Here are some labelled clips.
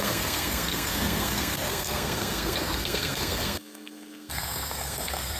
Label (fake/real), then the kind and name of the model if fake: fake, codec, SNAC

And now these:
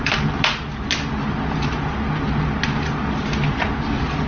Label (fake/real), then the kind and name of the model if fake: real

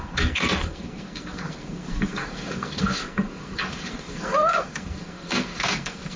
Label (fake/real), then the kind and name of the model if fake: fake, codec, SNAC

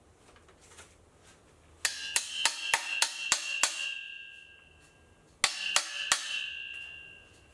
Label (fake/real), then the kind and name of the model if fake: real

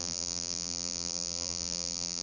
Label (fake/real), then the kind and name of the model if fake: fake, vocoder, BigVGAN v2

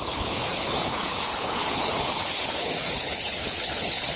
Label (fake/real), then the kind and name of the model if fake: fake, codec, HILCodec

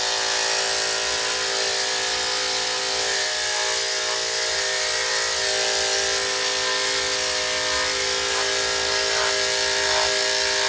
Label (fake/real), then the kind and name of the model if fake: real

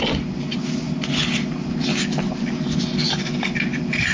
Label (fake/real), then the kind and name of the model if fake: real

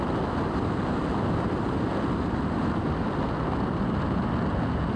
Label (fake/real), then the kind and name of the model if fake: real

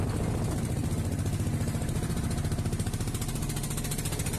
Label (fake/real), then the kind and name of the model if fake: real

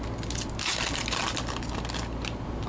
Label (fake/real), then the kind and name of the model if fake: real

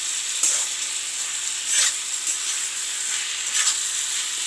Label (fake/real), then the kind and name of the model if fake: real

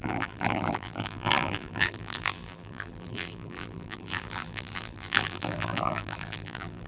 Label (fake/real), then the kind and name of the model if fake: fake, vocoder, BigVGAN v2